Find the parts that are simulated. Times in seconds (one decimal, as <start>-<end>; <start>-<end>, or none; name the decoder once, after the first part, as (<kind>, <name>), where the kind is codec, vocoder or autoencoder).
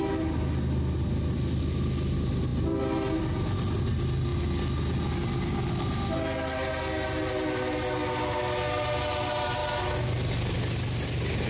none